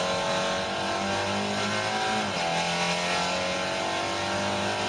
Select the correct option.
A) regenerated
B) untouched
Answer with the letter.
B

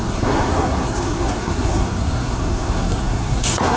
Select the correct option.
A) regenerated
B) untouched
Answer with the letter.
A